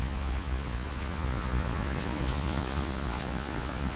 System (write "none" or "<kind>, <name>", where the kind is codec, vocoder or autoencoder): vocoder, Vocos